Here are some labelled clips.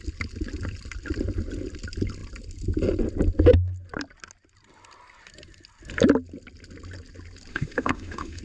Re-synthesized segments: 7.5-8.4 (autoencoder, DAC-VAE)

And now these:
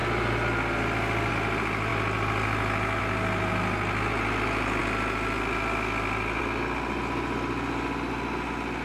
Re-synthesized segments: none

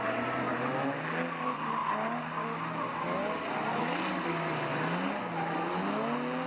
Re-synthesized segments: none